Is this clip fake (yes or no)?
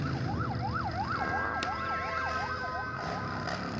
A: yes